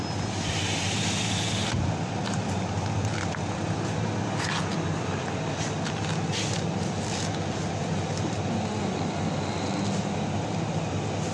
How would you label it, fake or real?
real